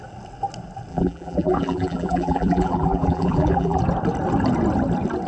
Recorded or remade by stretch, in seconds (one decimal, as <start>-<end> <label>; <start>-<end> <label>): 0.0-0.9 recorded; 0.9-3.8 remade; 3.8-5.3 recorded